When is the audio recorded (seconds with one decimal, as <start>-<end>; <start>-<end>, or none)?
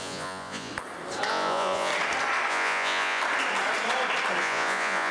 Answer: 0.7-1.3; 1.9-2.5; 3.2-4.4